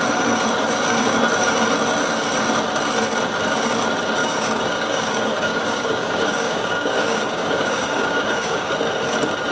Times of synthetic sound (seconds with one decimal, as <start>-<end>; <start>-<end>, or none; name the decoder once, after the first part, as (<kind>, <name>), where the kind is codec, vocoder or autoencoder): 4.2-8.7 (codec, DAC)